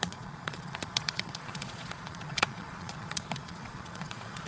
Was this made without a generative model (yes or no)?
no